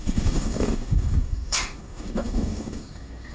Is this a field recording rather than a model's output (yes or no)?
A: no